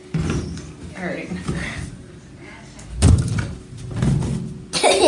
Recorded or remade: recorded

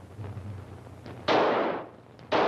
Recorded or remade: recorded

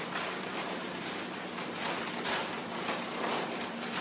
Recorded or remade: remade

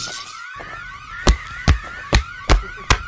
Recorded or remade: recorded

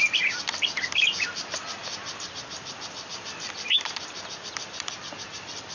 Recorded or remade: remade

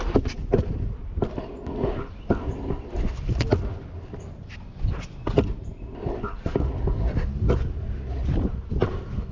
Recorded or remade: recorded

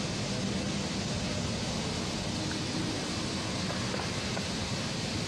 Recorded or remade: recorded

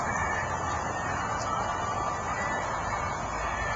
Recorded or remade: recorded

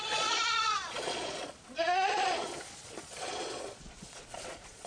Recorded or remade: remade